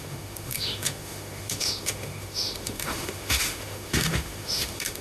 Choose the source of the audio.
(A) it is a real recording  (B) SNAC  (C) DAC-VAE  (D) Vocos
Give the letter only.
C